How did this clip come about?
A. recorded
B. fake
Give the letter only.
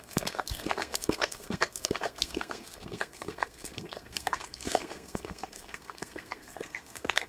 B